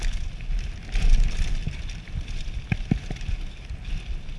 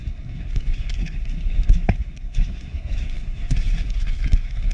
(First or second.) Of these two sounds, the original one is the first